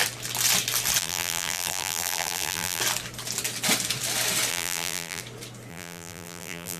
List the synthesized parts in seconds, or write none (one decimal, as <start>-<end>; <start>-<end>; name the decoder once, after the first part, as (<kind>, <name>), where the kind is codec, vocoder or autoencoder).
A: 1.0-2.8 (vocoder, BigVGAN v2); 4.5-5.2; 5.7-6.8